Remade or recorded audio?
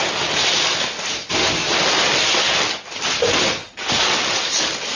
recorded